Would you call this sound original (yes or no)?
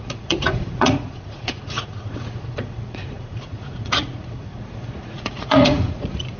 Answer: no